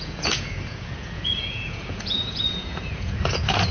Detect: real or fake fake